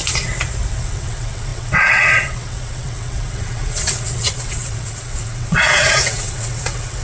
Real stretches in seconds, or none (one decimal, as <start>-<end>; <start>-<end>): 0.0-0.7